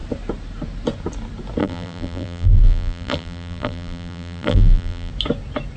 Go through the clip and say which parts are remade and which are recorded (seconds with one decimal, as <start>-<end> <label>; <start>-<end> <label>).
0.0-1.6 recorded; 1.6-5.1 remade; 5.1-5.8 recorded